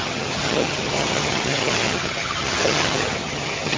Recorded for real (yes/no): no